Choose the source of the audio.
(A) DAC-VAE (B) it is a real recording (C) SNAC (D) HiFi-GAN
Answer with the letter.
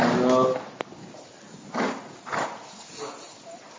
B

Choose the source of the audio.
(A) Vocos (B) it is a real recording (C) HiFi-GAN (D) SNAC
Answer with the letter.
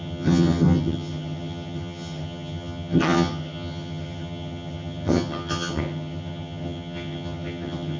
C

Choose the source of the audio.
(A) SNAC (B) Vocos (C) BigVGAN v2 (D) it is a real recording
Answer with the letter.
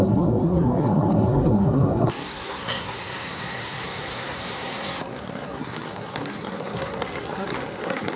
A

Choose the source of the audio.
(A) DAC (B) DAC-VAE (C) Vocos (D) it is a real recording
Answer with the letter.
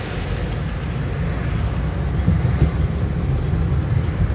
D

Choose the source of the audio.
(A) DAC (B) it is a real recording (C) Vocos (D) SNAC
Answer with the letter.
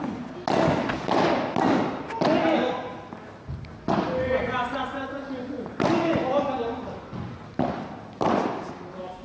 B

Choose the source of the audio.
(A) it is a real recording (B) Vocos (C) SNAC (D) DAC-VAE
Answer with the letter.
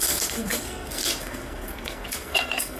C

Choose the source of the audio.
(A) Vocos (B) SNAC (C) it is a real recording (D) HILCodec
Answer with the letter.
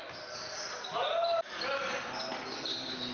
C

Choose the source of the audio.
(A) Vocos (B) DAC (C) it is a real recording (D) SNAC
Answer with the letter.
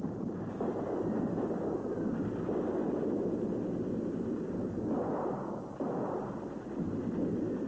C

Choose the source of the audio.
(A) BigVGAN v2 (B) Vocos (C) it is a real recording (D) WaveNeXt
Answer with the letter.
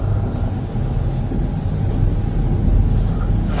C